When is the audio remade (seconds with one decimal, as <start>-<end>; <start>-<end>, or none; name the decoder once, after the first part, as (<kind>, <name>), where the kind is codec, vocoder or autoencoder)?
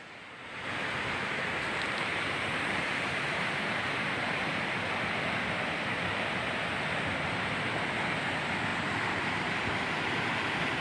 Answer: 2.1-4.6 (vocoder, BigVGAN v2); 8.7-9.9